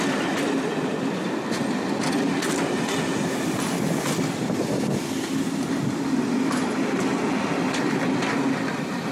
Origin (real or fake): real